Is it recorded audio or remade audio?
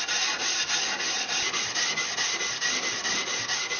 recorded